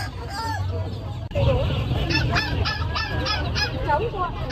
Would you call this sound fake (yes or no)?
no